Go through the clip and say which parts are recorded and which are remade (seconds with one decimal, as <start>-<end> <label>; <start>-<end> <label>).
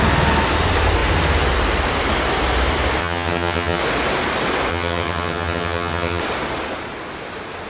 0.0-3.0 recorded; 3.0-3.8 remade; 3.8-4.7 recorded; 4.7-6.2 remade; 6.2-7.7 recorded